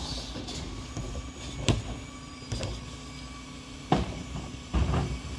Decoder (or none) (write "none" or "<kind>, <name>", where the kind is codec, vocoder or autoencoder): none